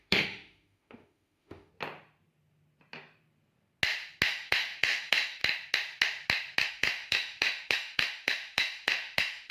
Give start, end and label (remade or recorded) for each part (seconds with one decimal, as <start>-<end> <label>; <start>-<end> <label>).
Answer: 0.0-1.7 remade; 1.7-4.3 recorded; 4.3-5.4 remade; 5.4-6.7 recorded; 6.7-9.5 remade